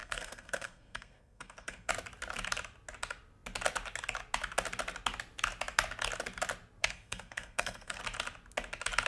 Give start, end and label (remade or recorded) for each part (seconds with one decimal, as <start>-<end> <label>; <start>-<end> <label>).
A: 0.0-1.9 remade; 1.9-6.8 recorded; 6.8-8.0 remade; 8.0-9.1 recorded